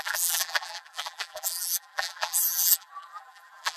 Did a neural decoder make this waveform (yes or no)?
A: yes